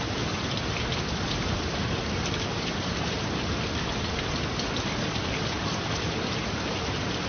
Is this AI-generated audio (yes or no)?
no